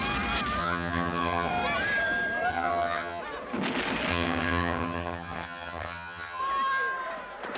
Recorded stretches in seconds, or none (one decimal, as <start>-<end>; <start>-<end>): 0.0-0.6; 1.5-2.5; 3.2-4.1; 6.4-7.6